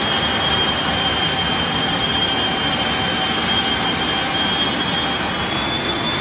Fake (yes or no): no